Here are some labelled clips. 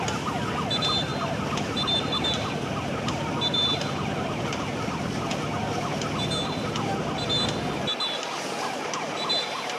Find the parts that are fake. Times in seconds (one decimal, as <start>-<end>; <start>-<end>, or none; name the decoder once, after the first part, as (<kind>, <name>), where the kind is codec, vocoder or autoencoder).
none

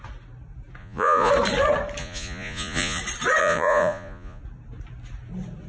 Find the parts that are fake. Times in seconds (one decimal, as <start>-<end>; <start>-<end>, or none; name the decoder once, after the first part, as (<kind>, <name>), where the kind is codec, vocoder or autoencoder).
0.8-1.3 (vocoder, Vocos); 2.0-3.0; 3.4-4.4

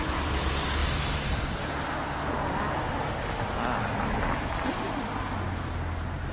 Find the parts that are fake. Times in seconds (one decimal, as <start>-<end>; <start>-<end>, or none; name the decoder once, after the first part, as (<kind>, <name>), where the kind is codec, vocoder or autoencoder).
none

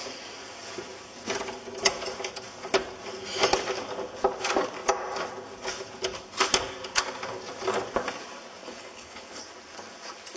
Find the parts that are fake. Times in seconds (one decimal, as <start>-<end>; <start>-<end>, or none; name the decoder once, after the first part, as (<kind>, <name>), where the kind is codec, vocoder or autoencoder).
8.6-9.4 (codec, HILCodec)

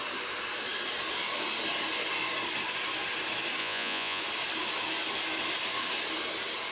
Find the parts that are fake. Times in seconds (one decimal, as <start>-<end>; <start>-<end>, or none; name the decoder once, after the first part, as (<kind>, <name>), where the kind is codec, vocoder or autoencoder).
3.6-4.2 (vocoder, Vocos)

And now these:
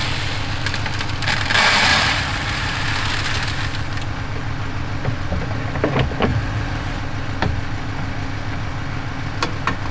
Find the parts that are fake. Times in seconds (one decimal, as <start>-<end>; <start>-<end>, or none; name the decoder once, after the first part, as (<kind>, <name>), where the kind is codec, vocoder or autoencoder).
1.9-2.8 (vocoder, BigVGAN v2); 6.3-7.0

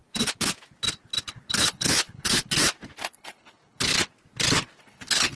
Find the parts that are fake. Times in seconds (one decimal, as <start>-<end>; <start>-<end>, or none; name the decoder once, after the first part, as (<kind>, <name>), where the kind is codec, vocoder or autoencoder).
1.5-2.6 (codec, HILCodec); 3.1-3.9; 4.8-5.3

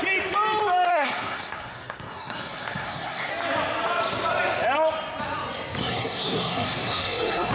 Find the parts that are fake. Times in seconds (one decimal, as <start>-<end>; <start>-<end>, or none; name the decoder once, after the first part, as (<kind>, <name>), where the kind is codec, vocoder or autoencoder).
0.9-3.3 (codec, SNAC); 5.8-7.5